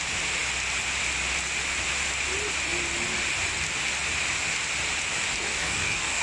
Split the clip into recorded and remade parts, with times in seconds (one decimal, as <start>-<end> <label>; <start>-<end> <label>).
0.0-5.4 recorded; 5.4-6.2 remade